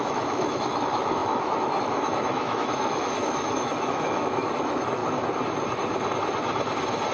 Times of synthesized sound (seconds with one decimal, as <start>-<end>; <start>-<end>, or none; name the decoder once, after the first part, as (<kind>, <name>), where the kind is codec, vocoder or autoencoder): 0.0-5.0 (autoencoder, DAC-VAE)